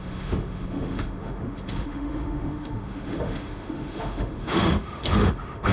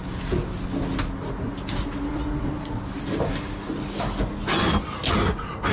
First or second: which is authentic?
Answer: second